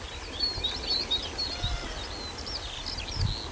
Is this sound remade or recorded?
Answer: recorded